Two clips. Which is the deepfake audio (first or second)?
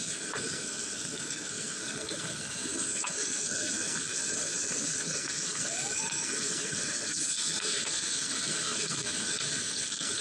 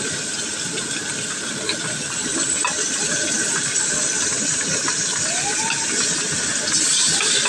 first